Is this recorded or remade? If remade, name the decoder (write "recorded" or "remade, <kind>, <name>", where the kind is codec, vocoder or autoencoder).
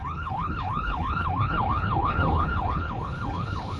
remade, codec, HILCodec